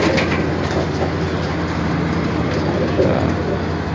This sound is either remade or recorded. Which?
recorded